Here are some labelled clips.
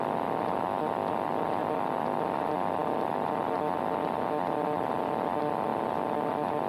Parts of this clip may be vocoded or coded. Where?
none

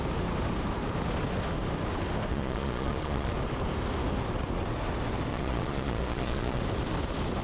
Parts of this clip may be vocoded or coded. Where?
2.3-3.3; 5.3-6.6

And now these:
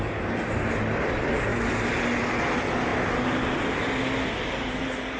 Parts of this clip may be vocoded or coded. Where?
none

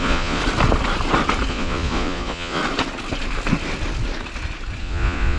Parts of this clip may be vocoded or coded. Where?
0.0-0.4; 1.5-2.6; 4.8-5.4